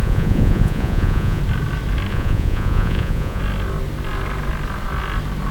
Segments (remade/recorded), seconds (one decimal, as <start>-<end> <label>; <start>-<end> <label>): 0.0-1.4 remade; 1.4-2.1 recorded; 2.1-3.4 remade; 3.4-5.5 recorded